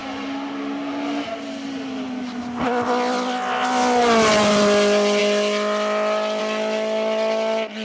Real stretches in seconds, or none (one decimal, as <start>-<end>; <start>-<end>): 0.0-7.8